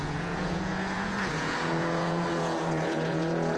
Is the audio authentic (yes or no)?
no